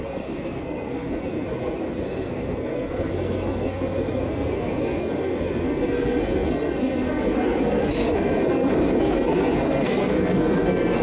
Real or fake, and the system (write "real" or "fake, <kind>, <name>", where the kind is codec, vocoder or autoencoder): fake, codec, SNAC